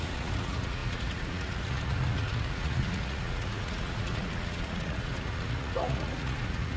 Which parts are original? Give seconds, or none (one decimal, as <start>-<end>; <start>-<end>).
none